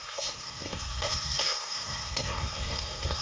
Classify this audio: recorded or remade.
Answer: remade